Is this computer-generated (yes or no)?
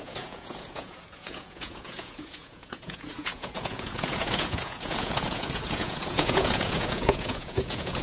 yes